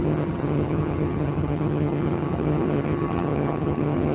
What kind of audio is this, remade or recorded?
remade